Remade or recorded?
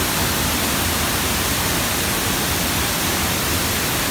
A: recorded